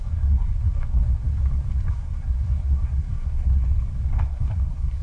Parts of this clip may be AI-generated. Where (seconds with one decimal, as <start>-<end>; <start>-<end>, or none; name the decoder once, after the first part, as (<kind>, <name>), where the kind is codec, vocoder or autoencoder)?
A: 0.0-1.3 (codec, SNAC); 1.9-3.6; 4.2-5.0